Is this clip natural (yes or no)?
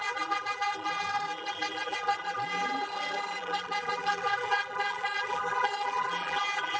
no